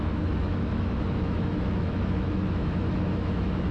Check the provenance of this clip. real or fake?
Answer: fake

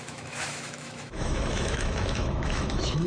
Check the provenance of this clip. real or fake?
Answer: fake